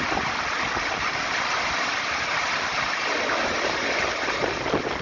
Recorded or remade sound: recorded